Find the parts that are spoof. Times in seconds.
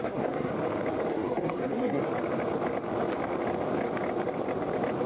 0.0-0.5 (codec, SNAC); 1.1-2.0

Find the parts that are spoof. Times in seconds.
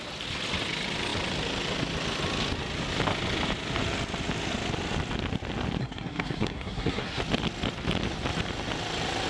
5.8-7.2 (codec, SNAC)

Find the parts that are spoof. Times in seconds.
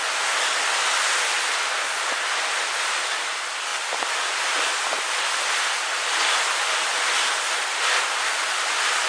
none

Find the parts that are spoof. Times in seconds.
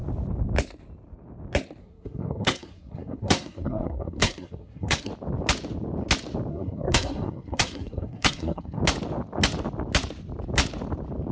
1.8-5.1 (codec, SNAC); 6.5-8.8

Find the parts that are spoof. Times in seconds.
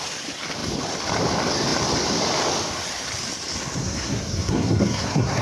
3.8-5.4 (codec, SNAC)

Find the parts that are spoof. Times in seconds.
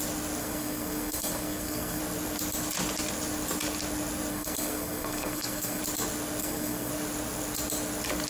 0.4-2.0 (codec, SNAC); 4.3-5.8; 6.4-6.9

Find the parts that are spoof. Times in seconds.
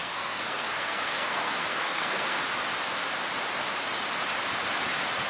0.0-2.4 (codec, SNAC)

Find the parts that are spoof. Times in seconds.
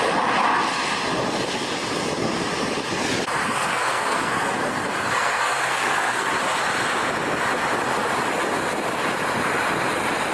3.4-6.3 (codec, SNAC)